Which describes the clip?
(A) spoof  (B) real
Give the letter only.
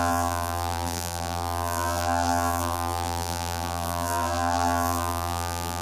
A